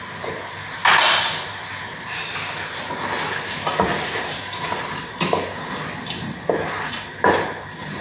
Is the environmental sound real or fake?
real